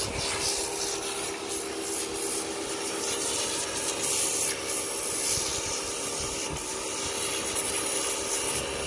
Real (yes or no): yes